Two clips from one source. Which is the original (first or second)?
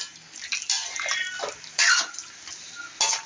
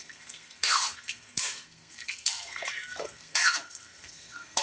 first